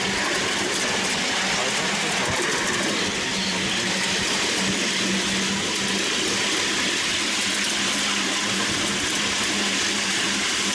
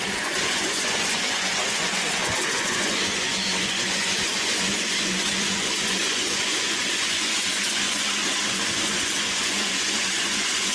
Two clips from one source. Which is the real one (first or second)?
first